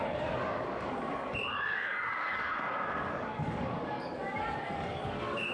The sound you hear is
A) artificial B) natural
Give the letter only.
A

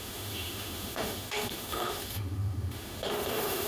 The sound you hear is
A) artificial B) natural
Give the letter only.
A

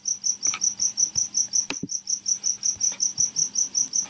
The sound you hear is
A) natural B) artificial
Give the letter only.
B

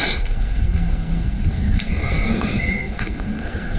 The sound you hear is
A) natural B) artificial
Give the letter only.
B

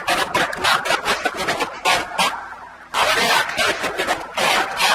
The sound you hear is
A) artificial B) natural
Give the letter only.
B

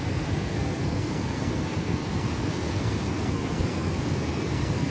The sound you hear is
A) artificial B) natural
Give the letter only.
A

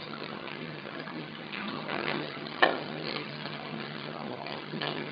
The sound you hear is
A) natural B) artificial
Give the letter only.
B